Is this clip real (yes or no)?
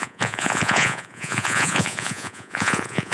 no